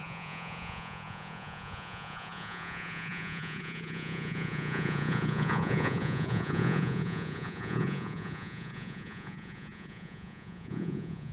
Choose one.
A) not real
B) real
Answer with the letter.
A